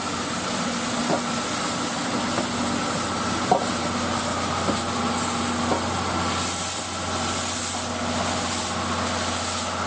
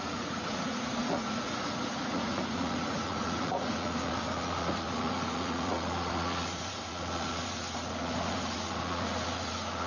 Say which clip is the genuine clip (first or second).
first